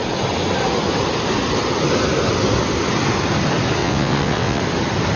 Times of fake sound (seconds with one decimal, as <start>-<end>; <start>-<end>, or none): 3.8-4.6